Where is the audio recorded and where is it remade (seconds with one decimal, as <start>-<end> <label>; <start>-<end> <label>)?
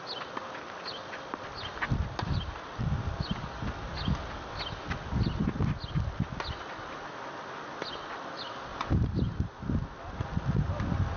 0.0-8.7 recorded; 8.7-9.6 remade; 9.6-11.2 recorded